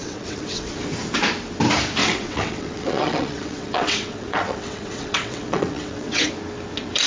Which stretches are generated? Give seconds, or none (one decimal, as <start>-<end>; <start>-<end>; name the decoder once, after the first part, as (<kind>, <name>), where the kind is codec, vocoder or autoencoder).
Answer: 0.0-0.7 (vocoder, WaveNeXt); 2.0-6.3